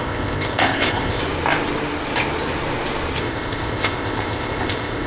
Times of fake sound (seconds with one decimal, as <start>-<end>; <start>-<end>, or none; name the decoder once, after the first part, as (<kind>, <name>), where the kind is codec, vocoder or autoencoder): 0.0-1.2 (codec, ZipCodec); 3.2-5.1